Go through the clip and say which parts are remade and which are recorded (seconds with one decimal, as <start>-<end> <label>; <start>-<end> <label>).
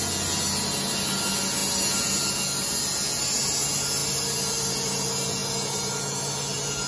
0.0-6.9 recorded